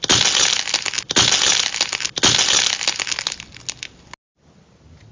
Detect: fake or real real